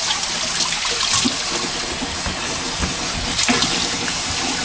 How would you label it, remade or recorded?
recorded